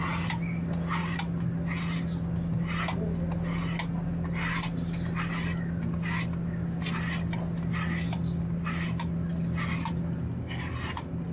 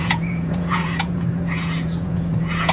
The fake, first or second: second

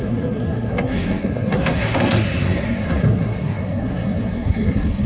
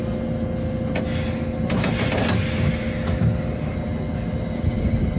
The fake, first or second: first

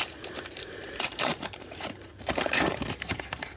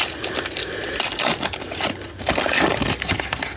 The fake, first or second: first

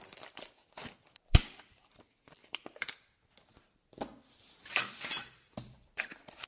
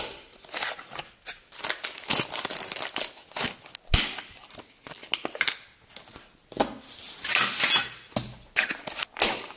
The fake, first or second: first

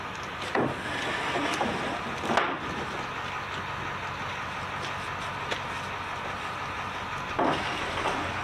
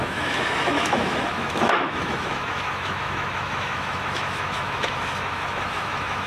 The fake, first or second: second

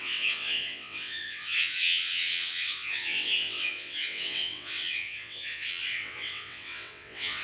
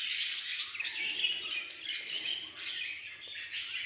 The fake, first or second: first